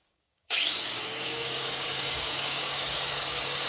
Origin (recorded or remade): remade